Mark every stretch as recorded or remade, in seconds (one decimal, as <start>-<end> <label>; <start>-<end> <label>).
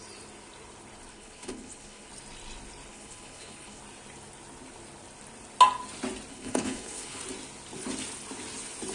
0.0-1.1 recorded; 1.1-2.1 remade; 2.1-2.9 recorded; 2.9-3.8 remade; 3.8-6.3 recorded; 6.3-7.2 remade; 7.2-8.9 recorded